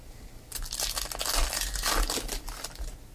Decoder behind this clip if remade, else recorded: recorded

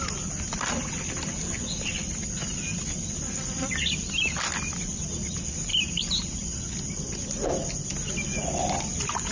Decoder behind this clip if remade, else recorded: recorded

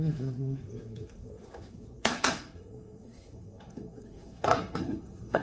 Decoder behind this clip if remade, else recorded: remade, codec, SNAC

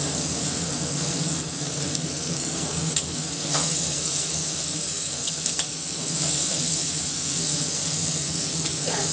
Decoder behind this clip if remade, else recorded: remade, codec, SNAC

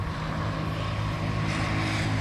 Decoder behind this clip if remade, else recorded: recorded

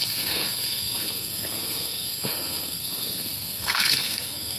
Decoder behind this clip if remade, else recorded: remade, codec, SNAC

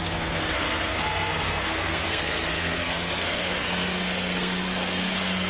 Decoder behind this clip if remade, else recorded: remade, codec, SNAC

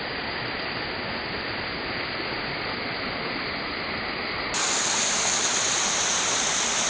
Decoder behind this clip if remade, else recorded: recorded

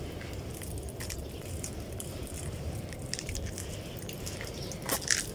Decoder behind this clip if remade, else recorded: recorded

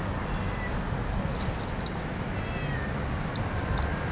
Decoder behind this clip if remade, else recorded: recorded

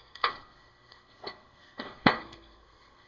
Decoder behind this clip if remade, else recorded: remade, codec, SNAC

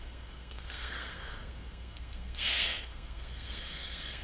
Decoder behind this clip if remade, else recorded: remade, codec, SNAC